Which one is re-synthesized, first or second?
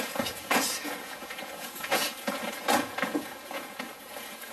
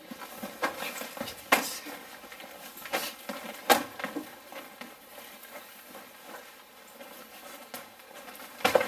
first